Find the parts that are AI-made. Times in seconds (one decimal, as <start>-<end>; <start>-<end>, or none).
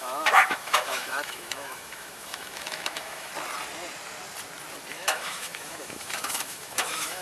0.0-3.3; 4.9-7.2